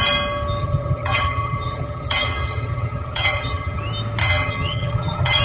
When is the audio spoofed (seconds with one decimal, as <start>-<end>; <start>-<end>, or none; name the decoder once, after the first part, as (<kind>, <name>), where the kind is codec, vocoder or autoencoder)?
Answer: 0.6-3.8 (vocoder, HiFi-GAN); 4.2-5.4